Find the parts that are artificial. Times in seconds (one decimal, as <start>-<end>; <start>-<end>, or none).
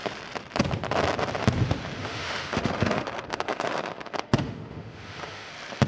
2.0-5.5